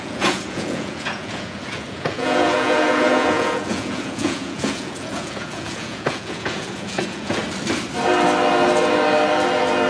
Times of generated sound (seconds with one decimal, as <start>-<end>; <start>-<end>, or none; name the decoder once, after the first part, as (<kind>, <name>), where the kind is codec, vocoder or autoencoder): 0.0-7.4 (vocoder, Vocos)

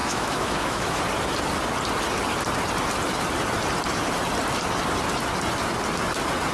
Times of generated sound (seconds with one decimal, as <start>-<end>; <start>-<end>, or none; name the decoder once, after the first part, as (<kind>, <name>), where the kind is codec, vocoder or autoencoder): 0.0-1.0 (autoencoder, DAC-VAE)